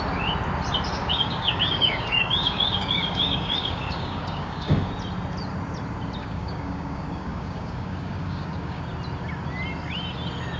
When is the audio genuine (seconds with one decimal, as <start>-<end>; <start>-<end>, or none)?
0.0-1.0; 4.9-6.2; 8.8-10.6